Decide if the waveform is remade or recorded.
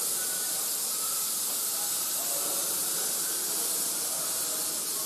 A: recorded